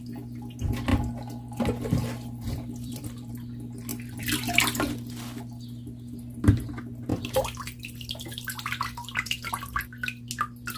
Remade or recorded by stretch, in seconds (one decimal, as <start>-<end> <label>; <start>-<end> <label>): 0.0-0.9 recorded; 0.9-3.3 remade; 3.3-3.9 recorded; 3.9-4.6 remade; 4.6-7.1 recorded; 7.1-9.5 remade; 9.5-10.8 recorded